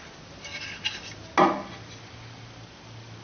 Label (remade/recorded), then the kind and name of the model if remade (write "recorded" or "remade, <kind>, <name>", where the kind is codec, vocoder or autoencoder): recorded